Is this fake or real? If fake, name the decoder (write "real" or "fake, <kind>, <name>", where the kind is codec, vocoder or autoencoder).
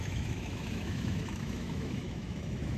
fake, autoencoder, DAC-VAE